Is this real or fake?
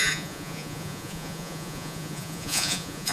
fake